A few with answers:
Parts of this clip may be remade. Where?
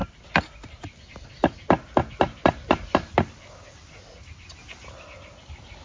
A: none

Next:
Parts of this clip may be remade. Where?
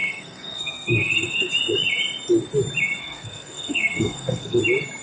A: 0.0-1.5 (codec, SNAC); 3.0-4.6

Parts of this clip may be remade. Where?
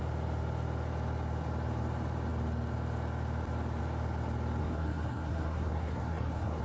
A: 4.6-6.6 (codec, SNAC)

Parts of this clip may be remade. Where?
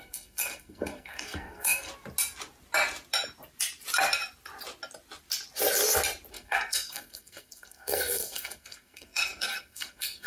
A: 0.0-1.9 (codec, SNAC); 6.3-10.3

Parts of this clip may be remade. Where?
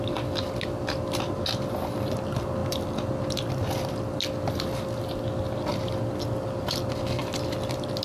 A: none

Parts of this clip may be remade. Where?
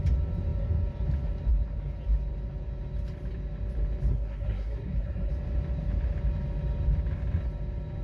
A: 4.1-5.3 (codec, SNAC)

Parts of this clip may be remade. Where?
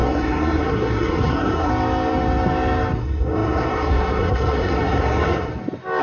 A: 0.0-1.7 (codec, SNAC); 3.0-5.5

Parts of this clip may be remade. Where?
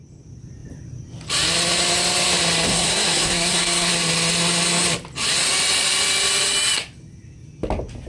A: 2.7-3.9 (codec, SNAC)